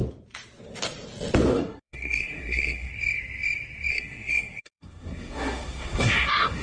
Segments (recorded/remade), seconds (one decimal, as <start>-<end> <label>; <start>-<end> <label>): 0.0-1.5 recorded; 1.5-2.9 remade; 2.9-3.9 recorded; 3.9-6.6 remade